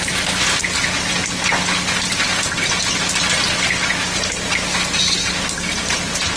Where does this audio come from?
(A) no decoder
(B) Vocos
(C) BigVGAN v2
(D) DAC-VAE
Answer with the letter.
A